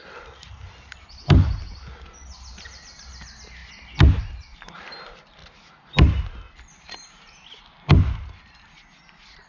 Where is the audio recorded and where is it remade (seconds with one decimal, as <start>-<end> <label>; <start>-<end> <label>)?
0.0-9.5 recorded